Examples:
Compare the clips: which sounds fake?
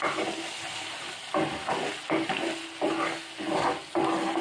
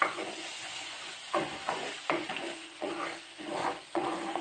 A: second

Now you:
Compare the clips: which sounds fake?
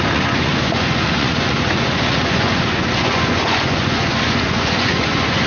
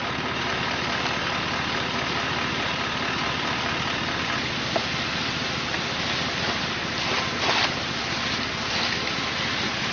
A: first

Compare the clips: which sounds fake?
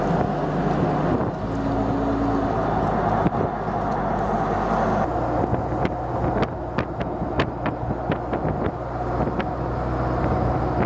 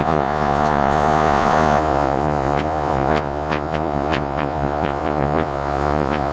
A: second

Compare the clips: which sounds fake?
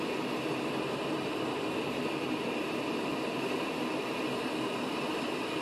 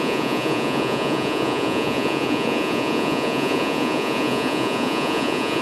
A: second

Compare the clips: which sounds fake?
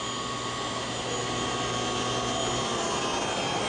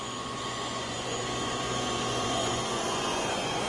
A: second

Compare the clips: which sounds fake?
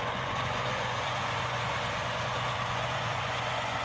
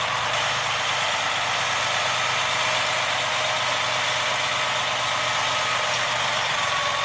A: first